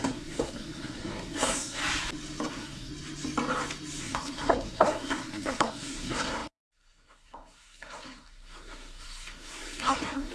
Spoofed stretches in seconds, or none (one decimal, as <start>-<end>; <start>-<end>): 0.0-1.8; 2.5-2.9; 4.0-10.3